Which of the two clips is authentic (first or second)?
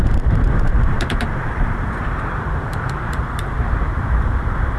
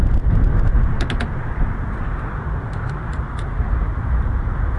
second